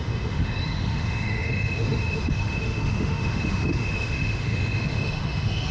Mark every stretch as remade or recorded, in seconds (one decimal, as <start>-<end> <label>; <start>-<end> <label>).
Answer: 0.0-5.7 remade